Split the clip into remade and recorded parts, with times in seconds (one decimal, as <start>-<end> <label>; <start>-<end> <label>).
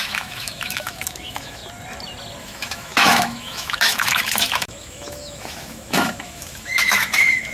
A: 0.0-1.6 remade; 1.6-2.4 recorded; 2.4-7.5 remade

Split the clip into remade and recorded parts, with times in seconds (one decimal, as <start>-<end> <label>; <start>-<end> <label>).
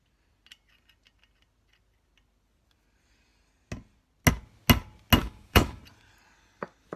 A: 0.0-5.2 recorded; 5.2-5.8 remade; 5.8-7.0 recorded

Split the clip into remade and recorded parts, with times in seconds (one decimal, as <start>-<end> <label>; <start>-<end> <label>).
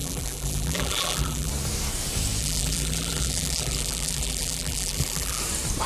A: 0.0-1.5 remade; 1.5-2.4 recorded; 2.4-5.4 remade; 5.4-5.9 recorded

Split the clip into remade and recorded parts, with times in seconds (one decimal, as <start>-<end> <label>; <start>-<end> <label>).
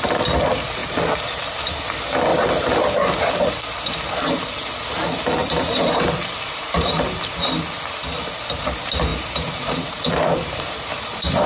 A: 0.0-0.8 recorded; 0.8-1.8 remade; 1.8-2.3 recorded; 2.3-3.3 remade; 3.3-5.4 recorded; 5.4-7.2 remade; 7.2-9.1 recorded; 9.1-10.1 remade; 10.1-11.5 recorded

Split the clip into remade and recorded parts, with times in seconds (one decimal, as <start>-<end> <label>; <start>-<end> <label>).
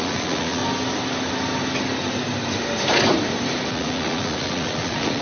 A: 0.0-0.6 remade; 0.6-3.7 recorded; 3.7-5.2 remade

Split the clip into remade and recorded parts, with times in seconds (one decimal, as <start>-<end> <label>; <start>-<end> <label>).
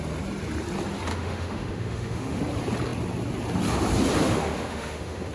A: 0.0-1.1 recorded; 1.1-2.4 remade; 2.4-4.2 recorded; 4.2-5.3 remade